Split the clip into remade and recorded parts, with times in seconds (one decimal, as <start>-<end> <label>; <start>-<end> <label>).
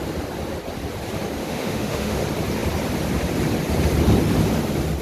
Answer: 0.0-1.4 recorded; 1.4-2.2 remade; 2.2-5.0 recorded